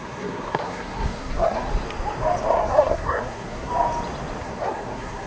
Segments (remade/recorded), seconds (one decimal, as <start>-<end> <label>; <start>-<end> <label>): 0.0-1.7 remade; 1.7-2.5 recorded; 2.5-3.7 remade; 3.7-4.4 recorded; 4.4-5.3 remade